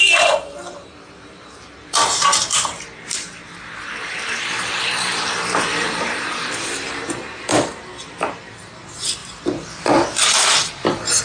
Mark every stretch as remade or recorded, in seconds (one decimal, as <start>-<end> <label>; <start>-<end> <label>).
0.0-11.2 remade